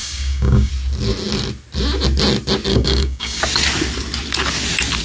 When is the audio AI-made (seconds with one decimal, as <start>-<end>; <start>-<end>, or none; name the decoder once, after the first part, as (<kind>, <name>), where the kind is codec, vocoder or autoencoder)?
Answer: 0.0-0.7 (codec, DAC); 2.7-3.4